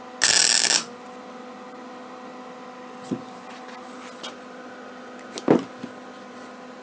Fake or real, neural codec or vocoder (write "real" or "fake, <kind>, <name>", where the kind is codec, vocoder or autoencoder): real